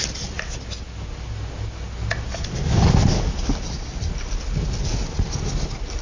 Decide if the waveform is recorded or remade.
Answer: recorded